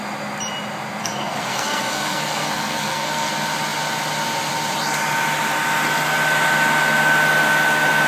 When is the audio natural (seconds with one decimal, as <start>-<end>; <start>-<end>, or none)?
0.0-1.0; 3.3-8.1